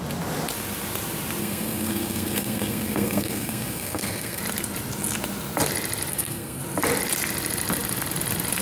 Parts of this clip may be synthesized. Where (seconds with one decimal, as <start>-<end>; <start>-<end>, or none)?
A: 1.4-4.4; 6.1-6.6